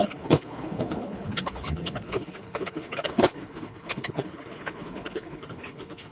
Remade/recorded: remade